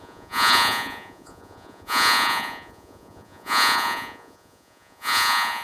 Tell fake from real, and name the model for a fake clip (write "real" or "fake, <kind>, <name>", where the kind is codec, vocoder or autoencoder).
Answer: fake, vocoder, Vocos